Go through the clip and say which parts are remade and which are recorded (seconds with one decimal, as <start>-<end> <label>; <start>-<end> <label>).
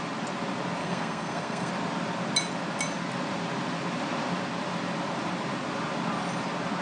0.0-0.8 recorded; 0.8-1.7 remade; 1.7-6.8 recorded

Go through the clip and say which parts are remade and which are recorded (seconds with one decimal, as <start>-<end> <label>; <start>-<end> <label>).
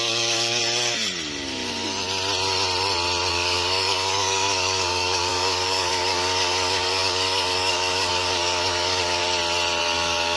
0.0-0.6 remade; 0.6-3.3 recorded; 3.3-9.2 remade; 9.2-9.8 recorded; 9.8-10.4 remade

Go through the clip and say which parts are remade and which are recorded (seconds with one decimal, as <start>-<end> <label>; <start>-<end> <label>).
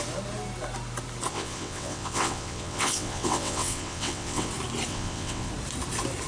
0.0-1.3 recorded; 1.3-4.5 remade; 4.5-4.9 recorded; 4.9-5.5 remade; 5.5-6.3 recorded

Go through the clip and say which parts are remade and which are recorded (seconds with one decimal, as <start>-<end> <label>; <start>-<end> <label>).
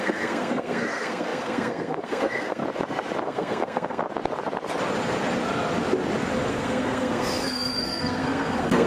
0.0-2.6 remade; 2.6-3.2 recorded; 3.2-4.0 remade; 4.0-6.5 recorded; 6.5-8.9 remade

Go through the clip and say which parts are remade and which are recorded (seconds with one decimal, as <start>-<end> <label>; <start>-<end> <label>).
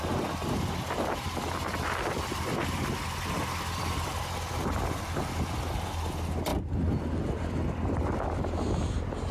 0.0-9.3 recorded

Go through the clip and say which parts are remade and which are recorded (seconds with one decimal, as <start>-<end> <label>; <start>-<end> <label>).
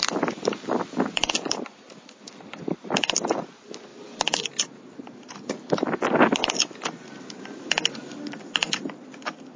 0.0-3.4 remade; 3.4-9.6 recorded